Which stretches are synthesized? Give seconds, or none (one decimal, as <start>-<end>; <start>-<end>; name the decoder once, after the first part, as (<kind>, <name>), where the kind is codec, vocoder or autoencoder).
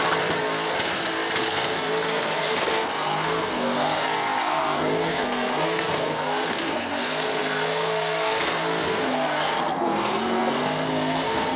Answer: 1.4-11.6 (codec, SNAC)